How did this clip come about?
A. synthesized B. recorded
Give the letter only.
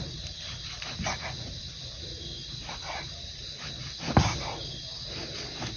B